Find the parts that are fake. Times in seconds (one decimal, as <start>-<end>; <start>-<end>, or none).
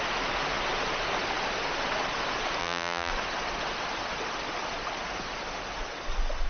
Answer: 2.6-3.1